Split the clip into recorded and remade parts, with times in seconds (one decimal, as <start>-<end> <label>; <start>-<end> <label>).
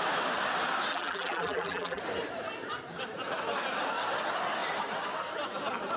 0.0-0.9 recorded; 0.9-2.0 remade; 2.0-6.0 recorded